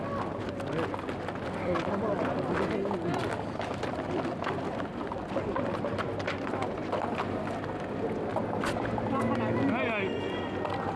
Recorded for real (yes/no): yes